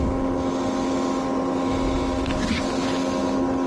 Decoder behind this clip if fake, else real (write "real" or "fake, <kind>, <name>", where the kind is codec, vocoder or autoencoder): real